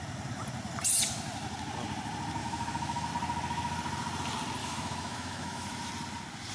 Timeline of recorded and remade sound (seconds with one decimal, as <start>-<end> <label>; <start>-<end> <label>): 0.0-2.4 recorded; 2.4-3.1 remade; 3.1-4.6 recorded; 4.6-5.9 remade; 5.9-6.5 recorded